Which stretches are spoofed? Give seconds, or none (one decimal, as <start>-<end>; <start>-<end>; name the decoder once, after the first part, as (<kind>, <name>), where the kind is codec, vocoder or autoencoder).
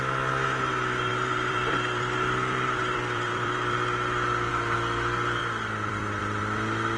1.1-4.5 (vocoder, BigVGAN v2); 5.4-6.4